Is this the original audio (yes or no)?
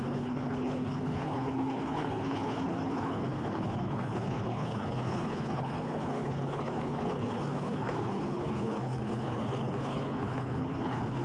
no